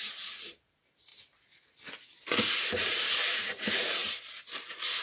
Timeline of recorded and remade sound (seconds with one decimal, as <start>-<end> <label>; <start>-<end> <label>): 0.0-1.1 remade; 1.1-2.7 recorded; 2.7-4.0 remade; 4.0-4.6 recorded; 4.6-5.0 remade